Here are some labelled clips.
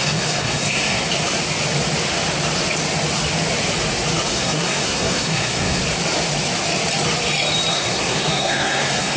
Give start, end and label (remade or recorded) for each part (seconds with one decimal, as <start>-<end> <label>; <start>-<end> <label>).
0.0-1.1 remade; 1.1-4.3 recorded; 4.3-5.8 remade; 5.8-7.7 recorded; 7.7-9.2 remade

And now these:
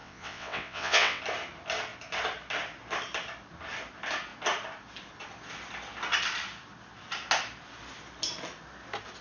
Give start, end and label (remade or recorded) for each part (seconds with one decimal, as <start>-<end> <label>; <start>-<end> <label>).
0.0-1.2 remade; 1.2-9.2 recorded

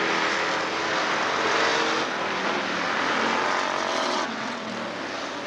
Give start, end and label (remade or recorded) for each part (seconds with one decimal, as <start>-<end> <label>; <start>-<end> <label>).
0.0-3.9 recorded; 3.9-4.7 remade; 4.7-5.5 recorded

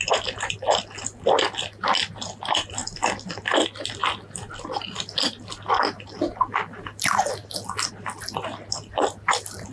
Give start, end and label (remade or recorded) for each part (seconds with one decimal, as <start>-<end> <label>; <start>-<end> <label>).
0.0-9.7 recorded